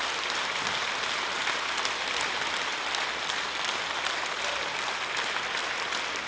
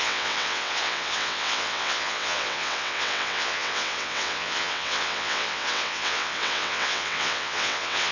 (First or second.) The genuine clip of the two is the first